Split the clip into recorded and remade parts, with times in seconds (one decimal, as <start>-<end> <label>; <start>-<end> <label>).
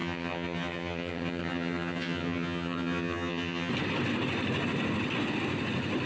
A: 0.0-3.7 remade; 3.7-6.1 recorded